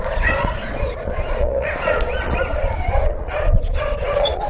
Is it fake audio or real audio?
fake